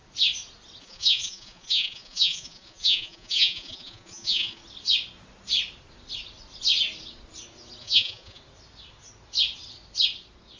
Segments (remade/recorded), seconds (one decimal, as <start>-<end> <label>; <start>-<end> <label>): 0.0-0.8 recorded; 0.8-4.6 remade; 4.6-7.8 recorded; 7.8-8.4 remade; 8.4-10.6 recorded